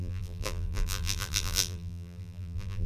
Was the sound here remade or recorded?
remade